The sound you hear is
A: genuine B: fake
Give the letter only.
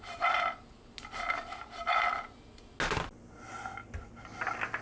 A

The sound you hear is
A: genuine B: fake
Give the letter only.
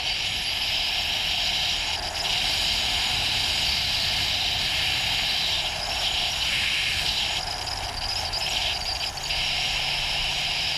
A